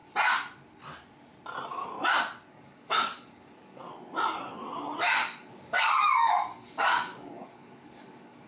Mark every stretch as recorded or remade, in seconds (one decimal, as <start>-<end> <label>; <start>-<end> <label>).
0.0-2.5 recorded; 2.5-3.8 remade; 3.8-5.0 recorded; 5.0-8.5 remade